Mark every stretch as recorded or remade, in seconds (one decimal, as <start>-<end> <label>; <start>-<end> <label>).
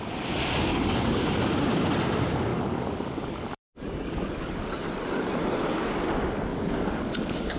0.0-0.7 recorded; 0.7-1.2 remade; 1.2-2.5 recorded; 2.5-4.9 remade; 4.9-6.5 recorded; 6.5-7.6 remade